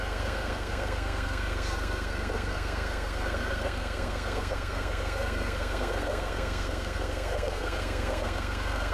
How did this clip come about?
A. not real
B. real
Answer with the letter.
A